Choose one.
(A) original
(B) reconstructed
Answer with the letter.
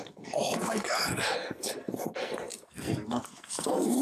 B